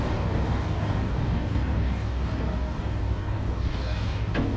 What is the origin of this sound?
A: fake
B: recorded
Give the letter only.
A